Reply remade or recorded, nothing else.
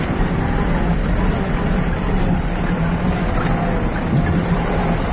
recorded